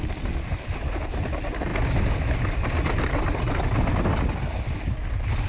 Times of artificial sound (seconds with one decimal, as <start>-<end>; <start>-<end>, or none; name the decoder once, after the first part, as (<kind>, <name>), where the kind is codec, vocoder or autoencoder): none